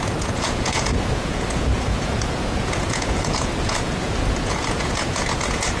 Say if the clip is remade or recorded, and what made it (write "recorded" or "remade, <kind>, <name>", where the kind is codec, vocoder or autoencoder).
remade, vocoder, Vocos